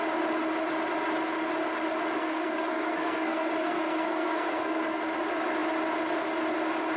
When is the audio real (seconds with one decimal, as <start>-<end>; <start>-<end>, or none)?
0.0-2.2; 5.0-7.0